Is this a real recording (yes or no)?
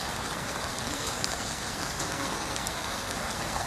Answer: no